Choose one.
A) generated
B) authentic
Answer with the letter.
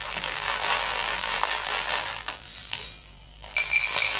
A